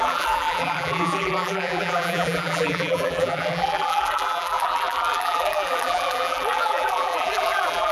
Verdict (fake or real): fake